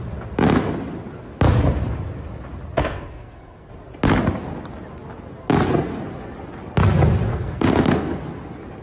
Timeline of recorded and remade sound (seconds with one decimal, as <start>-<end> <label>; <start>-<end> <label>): 0.0-2.8 recorded; 2.8-3.7 remade; 3.7-7.3 recorded; 7.3-8.2 remade; 8.2-8.8 recorded